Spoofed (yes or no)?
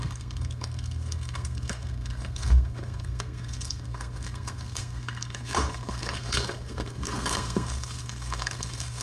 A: yes